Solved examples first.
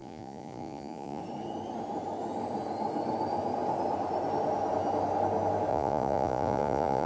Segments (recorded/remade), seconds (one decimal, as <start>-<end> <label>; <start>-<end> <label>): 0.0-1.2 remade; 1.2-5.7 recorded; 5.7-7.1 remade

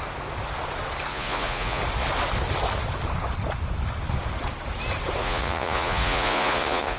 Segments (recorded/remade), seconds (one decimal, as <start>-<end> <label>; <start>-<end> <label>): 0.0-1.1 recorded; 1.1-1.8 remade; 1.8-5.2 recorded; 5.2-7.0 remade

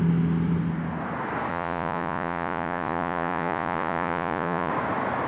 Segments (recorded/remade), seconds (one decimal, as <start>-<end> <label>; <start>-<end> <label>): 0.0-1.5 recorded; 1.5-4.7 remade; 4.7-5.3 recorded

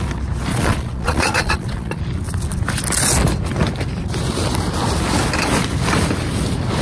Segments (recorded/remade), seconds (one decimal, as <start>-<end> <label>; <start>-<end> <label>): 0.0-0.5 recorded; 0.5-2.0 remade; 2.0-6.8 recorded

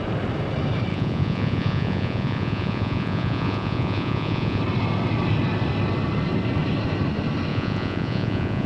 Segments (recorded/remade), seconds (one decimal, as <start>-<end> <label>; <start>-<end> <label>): 0.0-0.9 recorded; 0.9-4.6 remade; 4.6-7.5 recorded; 7.5-8.7 remade

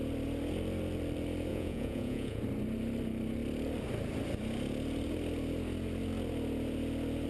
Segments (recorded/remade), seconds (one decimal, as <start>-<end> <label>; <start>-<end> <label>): 0.0-1.5 recorded; 1.5-2.4 remade; 2.4-7.3 recorded